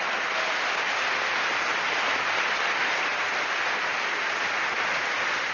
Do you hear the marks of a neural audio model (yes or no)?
no